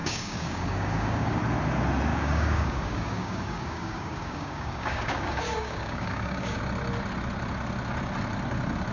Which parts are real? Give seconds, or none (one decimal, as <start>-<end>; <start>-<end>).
1.4-2.1; 6.6-8.9